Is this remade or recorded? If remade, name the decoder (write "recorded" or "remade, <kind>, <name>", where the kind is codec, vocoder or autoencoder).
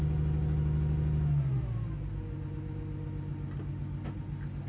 recorded